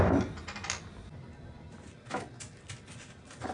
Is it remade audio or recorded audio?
recorded